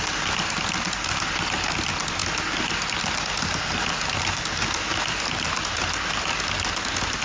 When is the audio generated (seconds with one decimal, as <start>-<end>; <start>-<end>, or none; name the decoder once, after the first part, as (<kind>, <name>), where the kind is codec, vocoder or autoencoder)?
none